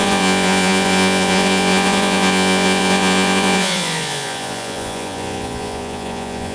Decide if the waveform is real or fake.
fake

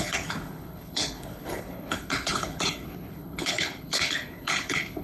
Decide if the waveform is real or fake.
fake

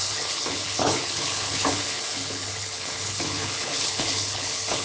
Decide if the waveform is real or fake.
fake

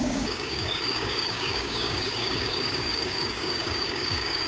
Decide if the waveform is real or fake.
fake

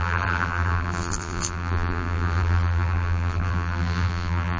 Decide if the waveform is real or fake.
fake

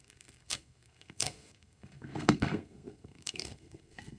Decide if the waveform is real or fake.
fake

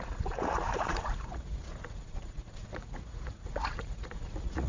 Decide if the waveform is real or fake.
fake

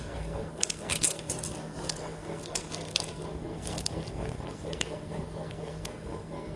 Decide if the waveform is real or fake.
fake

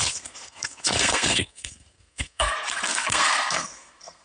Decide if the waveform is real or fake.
fake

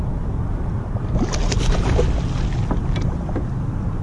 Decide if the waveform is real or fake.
real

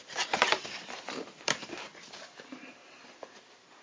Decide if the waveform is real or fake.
fake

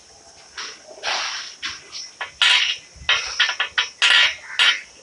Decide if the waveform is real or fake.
real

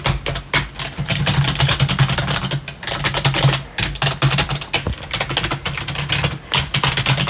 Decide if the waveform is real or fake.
real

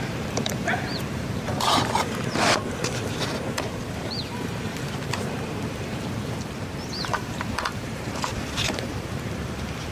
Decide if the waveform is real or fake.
fake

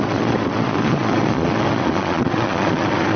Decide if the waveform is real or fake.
fake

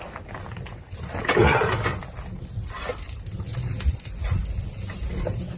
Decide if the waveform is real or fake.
real